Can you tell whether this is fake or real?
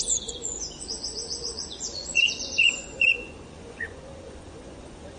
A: fake